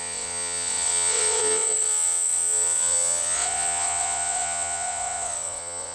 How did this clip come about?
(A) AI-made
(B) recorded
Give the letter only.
A